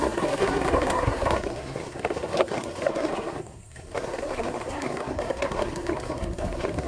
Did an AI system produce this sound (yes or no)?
yes